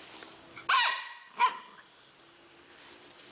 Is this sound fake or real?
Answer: real